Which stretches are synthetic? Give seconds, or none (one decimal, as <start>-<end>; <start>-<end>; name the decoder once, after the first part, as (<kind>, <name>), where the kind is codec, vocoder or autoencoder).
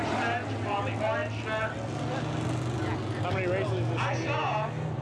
none